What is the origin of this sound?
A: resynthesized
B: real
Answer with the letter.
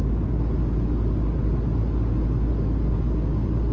B